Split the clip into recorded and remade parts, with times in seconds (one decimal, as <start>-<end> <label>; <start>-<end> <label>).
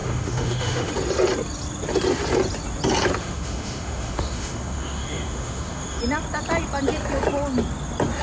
0.0-0.9 remade; 0.9-3.2 recorded; 3.2-6.0 remade; 6.0-8.2 recorded